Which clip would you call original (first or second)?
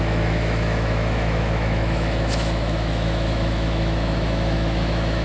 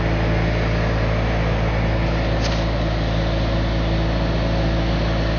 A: second